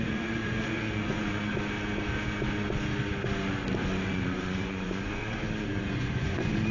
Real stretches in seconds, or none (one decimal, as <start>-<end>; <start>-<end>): 1.5-4.1